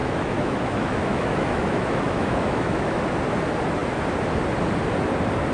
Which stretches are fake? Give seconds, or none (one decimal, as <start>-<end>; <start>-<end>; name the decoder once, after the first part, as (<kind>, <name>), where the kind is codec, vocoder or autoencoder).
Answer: 0.0-3.0 (autoencoder, DAC-VAE)